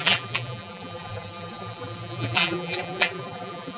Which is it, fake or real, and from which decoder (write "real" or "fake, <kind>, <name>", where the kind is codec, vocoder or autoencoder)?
fake, vocoder, BigVGAN v2